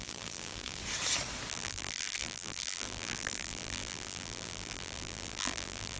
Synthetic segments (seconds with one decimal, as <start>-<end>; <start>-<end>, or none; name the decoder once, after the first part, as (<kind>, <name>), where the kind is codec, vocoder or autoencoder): 0.0-0.8 (vocoder, BigVGAN v2); 1.5-6.0